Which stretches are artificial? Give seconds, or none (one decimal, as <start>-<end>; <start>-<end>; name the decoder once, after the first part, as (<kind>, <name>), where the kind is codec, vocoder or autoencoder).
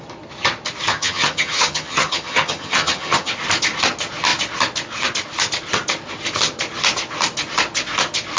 0.9-3.3 (vocoder, HiFi-GAN)